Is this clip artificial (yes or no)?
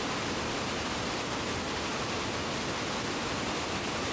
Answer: no